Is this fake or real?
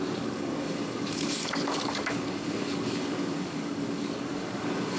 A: fake